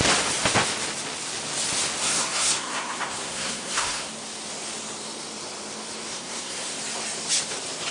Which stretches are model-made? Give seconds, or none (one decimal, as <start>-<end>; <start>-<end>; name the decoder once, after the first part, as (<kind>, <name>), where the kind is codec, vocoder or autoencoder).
2.0-4.1 (codec, SNAC); 6.1-6.7